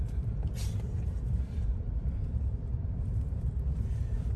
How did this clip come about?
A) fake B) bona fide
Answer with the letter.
A